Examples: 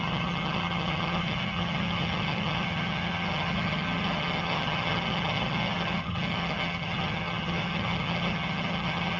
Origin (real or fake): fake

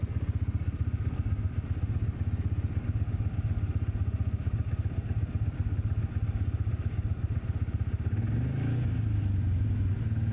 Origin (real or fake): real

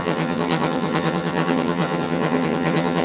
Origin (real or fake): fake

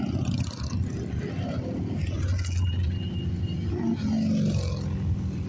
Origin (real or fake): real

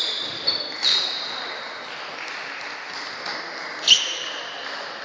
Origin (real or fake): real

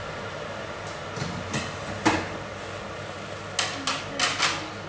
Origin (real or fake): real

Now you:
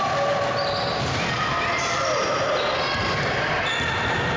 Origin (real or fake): real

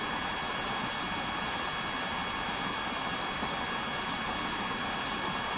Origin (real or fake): real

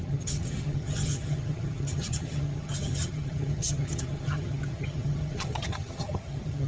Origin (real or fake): fake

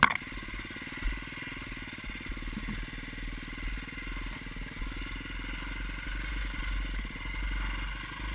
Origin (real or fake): real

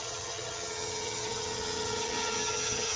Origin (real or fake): fake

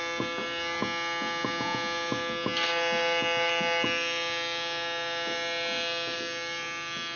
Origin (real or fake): real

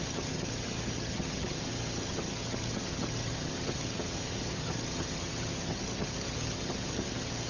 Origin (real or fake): fake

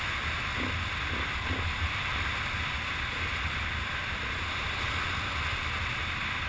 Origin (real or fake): real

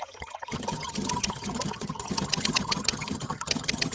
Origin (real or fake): fake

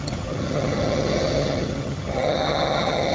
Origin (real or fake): fake